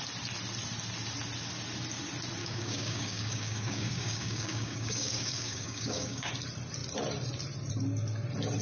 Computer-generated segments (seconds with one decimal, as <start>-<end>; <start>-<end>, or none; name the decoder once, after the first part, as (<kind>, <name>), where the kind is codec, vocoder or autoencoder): 2.4-6.3 (codec, DAC)